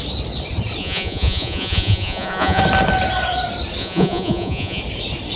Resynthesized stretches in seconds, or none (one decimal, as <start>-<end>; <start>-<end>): 0.8-2.6; 3.8-4.8